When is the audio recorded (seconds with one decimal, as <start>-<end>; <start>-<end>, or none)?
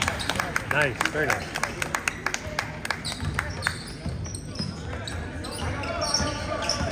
0.0-6.9